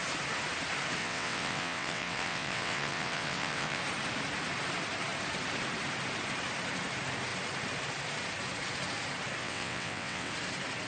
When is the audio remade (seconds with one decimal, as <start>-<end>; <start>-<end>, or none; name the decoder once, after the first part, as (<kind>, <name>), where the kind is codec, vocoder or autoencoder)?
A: 1.0-3.8 (vocoder, WaveNeXt); 9.4-10.3